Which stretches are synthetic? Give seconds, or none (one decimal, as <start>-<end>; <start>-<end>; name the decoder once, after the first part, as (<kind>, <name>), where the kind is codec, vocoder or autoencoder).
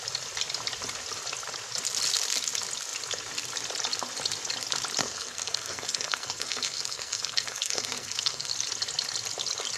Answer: 5.0-8.5 (codec, SNAC)